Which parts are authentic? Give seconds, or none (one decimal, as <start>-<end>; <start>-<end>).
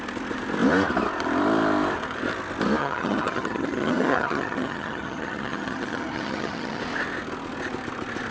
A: 0.0-2.8; 6.8-8.3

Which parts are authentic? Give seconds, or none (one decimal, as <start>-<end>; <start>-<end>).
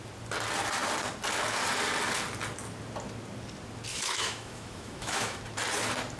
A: 0.0-3.9; 5.4-6.2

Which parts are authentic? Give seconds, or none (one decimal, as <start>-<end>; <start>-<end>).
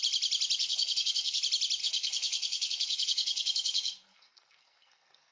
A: 0.0-0.6; 1.4-1.8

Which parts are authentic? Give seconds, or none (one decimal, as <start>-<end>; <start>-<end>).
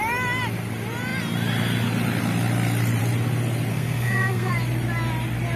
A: 0.0-3.7; 4.5-5.6